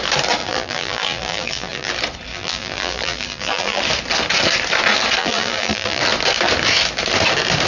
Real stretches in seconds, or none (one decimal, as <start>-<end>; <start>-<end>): 0.0-0.4; 1.9-2.3; 3.8-5.2; 6.0-7.7